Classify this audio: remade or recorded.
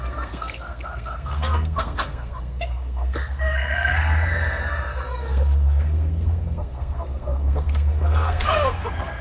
remade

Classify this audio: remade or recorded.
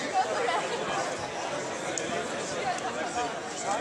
recorded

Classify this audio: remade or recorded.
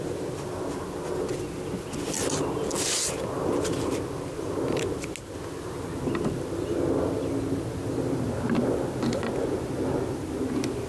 recorded